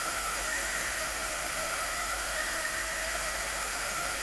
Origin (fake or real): fake